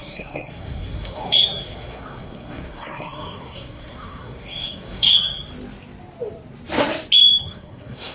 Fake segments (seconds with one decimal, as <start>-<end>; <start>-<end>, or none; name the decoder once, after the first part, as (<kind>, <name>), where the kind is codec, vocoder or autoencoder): 0.0-5.5 (codec, SNAC); 7.4-8.1